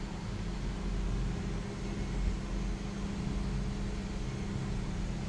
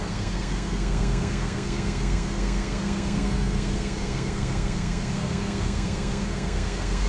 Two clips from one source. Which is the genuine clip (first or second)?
first